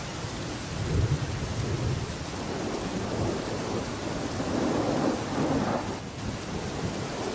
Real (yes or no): yes